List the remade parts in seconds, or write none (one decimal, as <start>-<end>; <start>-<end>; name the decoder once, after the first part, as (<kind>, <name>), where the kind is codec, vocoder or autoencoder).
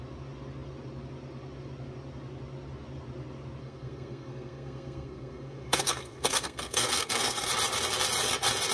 3.6-7.5 (codec, SNAC)